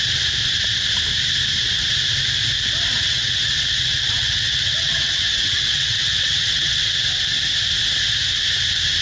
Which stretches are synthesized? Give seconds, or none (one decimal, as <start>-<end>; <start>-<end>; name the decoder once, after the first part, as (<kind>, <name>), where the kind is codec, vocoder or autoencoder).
2.9-6.8 (vocoder, WaveNeXt)